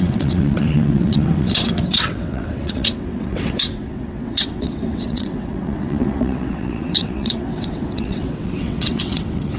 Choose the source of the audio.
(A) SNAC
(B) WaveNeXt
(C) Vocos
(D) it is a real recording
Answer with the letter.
B